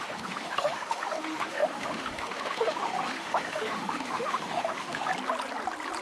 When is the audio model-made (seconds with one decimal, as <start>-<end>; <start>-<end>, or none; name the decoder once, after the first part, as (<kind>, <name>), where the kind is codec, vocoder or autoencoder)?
0.0-5.1 (autoencoder, DAC-VAE)